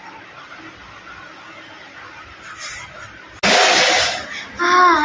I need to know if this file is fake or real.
real